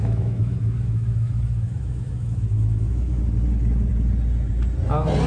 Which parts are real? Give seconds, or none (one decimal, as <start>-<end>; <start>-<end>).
3.2-5.3